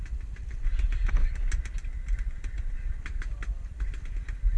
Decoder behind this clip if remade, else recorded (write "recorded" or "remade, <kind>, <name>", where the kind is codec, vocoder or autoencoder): recorded